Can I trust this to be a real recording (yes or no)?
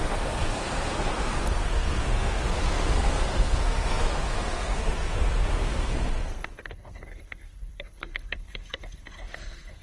no